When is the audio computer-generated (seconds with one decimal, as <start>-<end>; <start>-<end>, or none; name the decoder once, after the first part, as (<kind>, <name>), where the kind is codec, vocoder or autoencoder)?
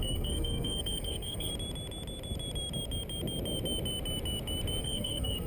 0.0-1.5 (codec, SNAC); 4.8-5.5